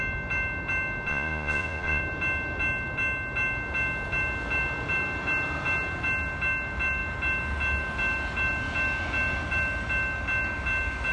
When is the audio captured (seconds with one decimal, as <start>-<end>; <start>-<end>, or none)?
0.0-1.1; 2.0-11.1